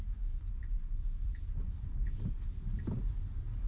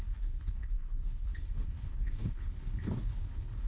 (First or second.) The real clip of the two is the first